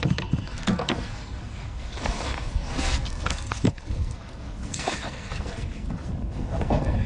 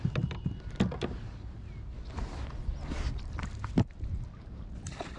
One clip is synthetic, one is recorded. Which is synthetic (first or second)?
first